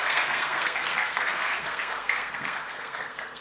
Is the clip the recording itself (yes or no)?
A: no